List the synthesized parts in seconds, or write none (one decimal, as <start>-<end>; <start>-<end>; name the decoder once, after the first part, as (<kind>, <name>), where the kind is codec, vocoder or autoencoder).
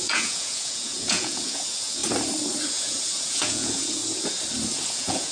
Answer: 0.0-2.0 (vocoder, Vocos); 2.7-4.0; 4.8-5.3